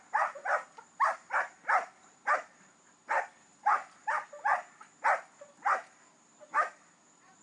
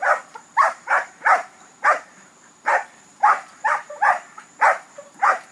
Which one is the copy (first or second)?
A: second